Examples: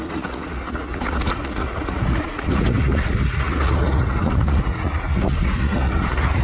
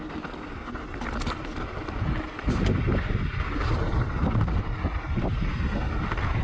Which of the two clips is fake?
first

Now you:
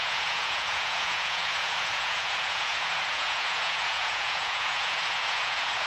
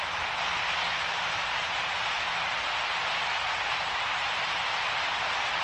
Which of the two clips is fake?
first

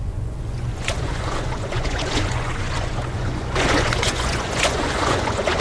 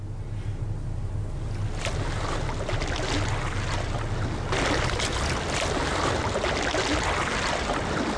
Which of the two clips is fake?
first